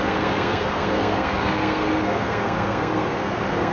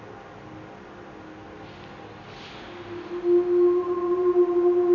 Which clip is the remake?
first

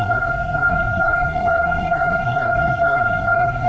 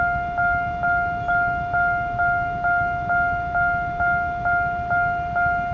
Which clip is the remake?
first